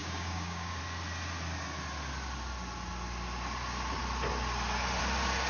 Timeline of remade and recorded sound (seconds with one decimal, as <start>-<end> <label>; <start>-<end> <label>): 0.0-0.8 remade; 0.8-5.5 recorded